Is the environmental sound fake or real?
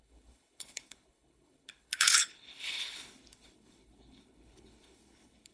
fake